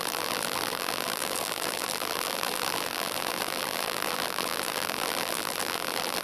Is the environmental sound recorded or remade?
remade